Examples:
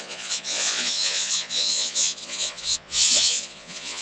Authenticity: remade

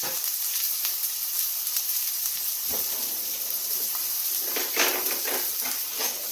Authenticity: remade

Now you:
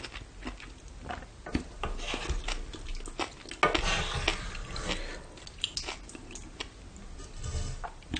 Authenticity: recorded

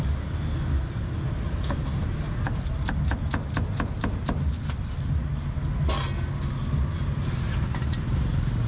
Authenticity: recorded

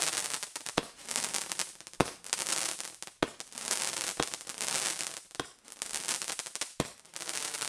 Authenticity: recorded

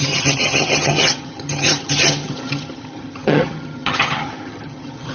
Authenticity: remade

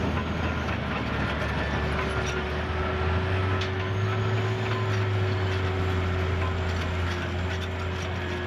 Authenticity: recorded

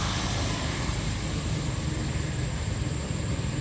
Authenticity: recorded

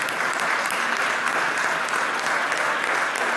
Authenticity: recorded